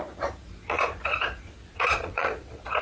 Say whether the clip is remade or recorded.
remade